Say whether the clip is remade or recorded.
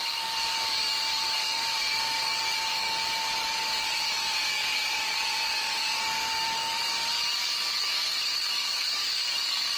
remade